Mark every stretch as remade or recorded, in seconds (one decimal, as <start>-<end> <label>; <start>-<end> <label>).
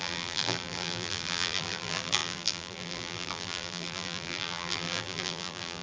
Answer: 0.0-5.8 remade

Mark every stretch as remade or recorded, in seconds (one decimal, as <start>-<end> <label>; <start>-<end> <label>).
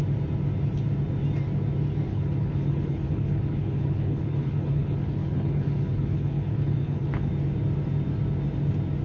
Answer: 0.0-2.1 recorded; 2.1-7.3 remade; 7.3-9.0 recorded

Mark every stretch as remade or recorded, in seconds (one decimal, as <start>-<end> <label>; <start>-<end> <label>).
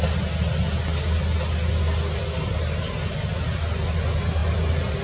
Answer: 0.0-5.0 recorded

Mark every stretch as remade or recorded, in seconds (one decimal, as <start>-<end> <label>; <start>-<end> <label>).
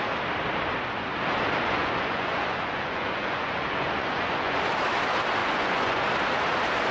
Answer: 0.0-1.6 recorded; 1.6-4.7 remade; 4.7-5.4 recorded; 5.4-6.0 remade; 6.0-6.9 recorded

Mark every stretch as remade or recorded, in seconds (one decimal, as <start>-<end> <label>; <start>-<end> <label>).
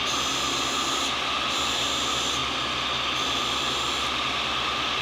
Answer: 0.0-5.0 recorded